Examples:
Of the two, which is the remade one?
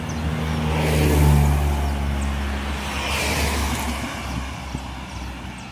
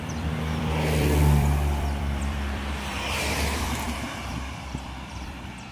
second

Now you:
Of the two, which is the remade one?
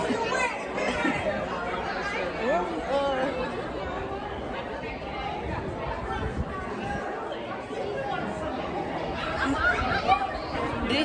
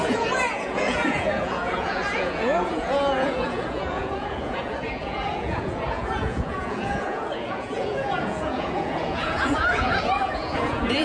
second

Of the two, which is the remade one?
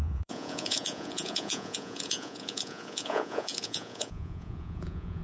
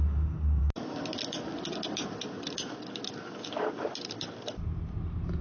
first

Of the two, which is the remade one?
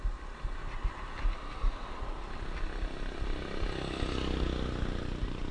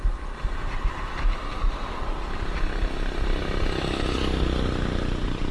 second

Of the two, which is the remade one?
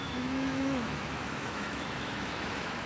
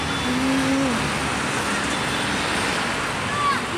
first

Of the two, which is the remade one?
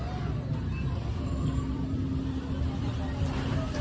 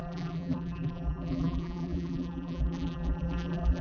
second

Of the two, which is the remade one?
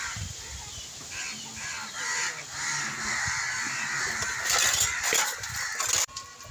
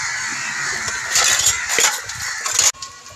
first